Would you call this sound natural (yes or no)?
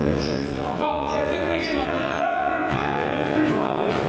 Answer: no